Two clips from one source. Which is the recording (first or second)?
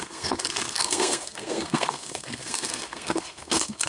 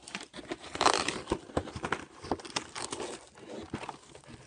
second